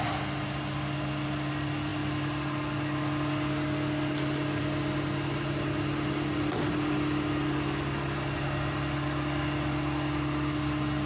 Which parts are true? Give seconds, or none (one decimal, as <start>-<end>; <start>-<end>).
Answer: 0.0-11.1